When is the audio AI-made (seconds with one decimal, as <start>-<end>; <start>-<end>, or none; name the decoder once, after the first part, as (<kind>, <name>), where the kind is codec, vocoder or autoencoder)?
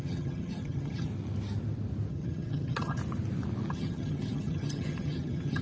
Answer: 0.0-1.1 (vocoder, HiFi-GAN); 2.1-3.0; 3.7-5.6